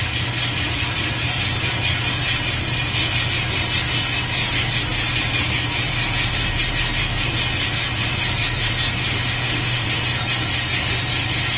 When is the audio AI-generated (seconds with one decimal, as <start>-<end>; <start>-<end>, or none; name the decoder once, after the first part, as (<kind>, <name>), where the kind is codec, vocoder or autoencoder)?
9.0-10.0 (autoencoder, DAC-VAE)